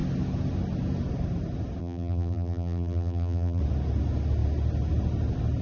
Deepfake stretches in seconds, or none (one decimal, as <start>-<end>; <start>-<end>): 1.8-3.6